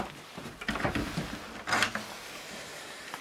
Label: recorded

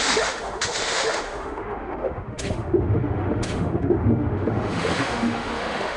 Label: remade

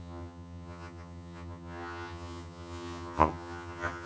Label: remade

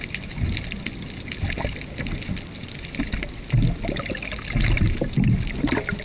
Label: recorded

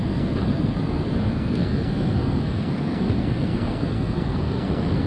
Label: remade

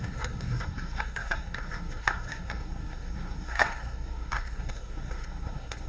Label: remade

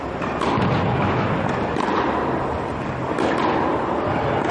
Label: recorded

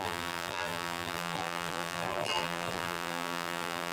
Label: remade